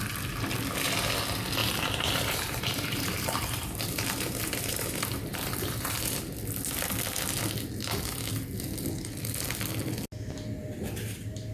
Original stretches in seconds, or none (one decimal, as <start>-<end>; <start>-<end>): 0.0-1.6; 6.0-11.5